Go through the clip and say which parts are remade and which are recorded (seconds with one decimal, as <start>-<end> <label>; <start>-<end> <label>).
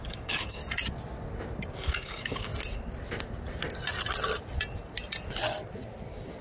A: 0.0-0.6 remade; 0.6-1.7 recorded; 1.7-2.5 remade; 2.5-6.4 recorded